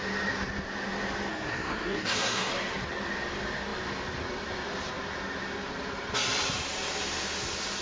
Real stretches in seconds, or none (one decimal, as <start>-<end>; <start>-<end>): 0.0-1.3; 2.5-7.8